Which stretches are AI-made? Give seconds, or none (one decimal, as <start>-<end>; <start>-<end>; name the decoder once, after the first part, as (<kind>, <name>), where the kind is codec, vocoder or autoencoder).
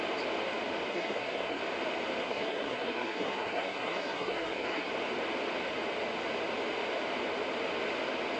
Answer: 0.9-1.6 (codec, SNAC); 2.2-4.9